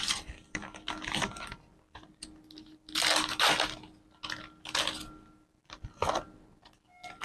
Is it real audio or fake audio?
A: real